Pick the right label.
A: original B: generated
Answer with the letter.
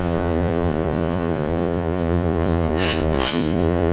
B